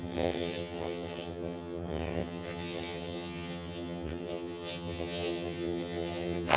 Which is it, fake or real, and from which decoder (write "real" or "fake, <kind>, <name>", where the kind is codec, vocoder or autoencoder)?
fake, vocoder, HiFi-GAN